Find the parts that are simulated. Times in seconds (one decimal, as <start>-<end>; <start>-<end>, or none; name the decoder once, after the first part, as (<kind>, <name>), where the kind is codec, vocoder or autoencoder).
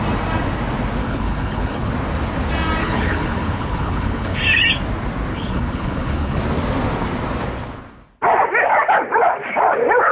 1.0-1.9 (codec, HILCodec); 2.8-4.4; 5.3-6.4